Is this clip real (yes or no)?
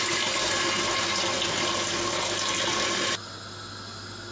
yes